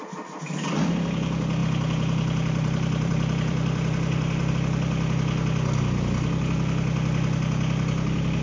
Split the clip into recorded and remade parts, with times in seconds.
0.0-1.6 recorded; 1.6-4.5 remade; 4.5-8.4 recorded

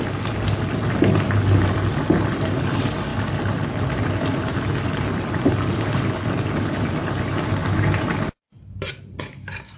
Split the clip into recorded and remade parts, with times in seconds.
0.0-3.1 recorded; 3.1-5.5 remade; 5.5-7.6 recorded; 7.6-9.2 remade; 9.2-9.8 recorded